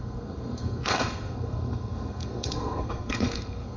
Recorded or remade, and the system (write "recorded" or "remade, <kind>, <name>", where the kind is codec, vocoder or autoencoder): remade, codec, SNAC